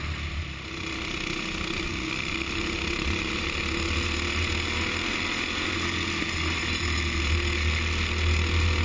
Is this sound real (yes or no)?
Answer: yes